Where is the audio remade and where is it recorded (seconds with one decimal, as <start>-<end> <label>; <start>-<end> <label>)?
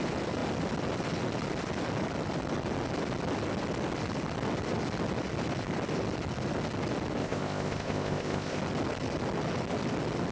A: 0.0-7.2 recorded; 7.2-8.6 remade; 8.6-10.3 recorded